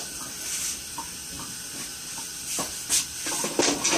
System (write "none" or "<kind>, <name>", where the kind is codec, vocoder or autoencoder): none